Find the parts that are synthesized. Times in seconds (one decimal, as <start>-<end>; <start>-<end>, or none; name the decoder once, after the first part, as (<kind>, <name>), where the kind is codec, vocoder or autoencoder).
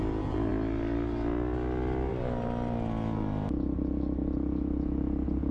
none